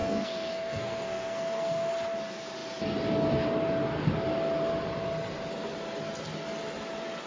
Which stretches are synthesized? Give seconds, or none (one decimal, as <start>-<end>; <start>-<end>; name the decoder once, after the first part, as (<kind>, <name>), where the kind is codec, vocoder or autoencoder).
0.0-1.9 (codec, SNAC)